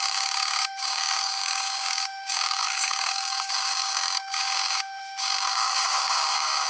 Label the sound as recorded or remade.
remade